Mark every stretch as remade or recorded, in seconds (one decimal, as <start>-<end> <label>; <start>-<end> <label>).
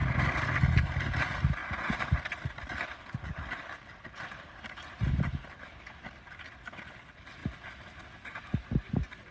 0.0-9.3 recorded